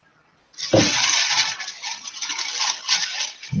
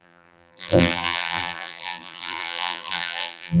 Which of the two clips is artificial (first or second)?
second